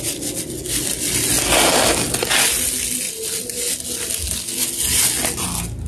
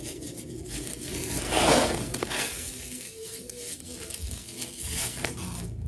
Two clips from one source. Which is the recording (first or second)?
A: first